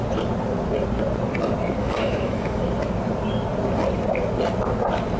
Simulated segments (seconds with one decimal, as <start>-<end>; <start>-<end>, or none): 1.8-2.6